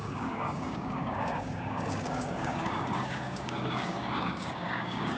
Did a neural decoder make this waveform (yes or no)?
yes